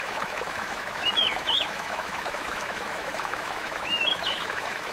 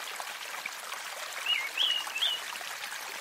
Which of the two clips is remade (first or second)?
first